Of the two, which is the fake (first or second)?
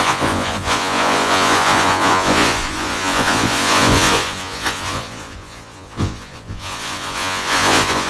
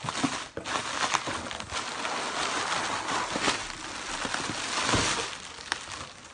first